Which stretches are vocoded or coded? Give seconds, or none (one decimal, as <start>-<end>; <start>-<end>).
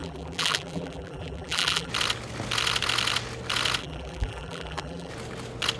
0.0-1.9; 3.8-5.1